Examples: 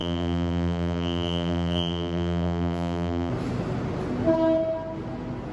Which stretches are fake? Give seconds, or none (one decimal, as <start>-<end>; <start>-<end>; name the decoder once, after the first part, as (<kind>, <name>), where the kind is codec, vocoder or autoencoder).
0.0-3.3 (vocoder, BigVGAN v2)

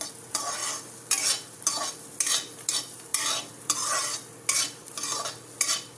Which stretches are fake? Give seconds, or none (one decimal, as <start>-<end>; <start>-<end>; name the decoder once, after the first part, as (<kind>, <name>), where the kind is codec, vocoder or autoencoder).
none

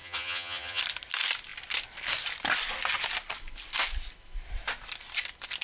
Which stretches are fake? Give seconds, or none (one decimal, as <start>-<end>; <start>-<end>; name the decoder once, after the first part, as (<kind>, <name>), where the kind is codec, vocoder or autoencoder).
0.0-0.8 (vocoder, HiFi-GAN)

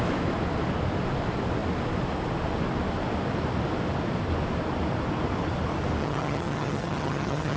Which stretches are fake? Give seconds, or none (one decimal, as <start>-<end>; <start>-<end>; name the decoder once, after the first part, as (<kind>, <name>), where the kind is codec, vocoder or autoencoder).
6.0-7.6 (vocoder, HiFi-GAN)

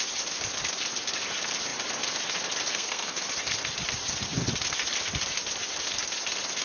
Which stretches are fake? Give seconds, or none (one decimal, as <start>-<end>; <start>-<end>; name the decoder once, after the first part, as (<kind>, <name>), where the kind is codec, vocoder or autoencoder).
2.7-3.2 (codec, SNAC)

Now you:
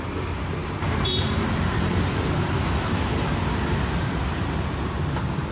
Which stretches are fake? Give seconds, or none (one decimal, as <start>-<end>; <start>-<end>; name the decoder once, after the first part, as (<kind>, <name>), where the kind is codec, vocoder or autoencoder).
0.6-3.5 (vocoder, BigVGAN v2)

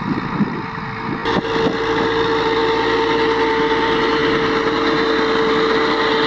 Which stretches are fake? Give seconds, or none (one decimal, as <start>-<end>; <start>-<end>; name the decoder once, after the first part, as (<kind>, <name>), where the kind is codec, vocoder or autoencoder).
none

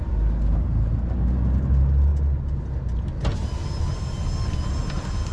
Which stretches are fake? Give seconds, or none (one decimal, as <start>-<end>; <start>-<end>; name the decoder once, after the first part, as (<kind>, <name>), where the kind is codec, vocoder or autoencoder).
none